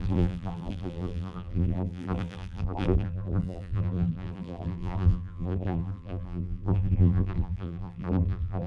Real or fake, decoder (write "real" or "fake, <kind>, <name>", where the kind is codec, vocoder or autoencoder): fake, vocoder, BigVGAN v2